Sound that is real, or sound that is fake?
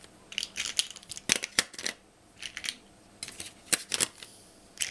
real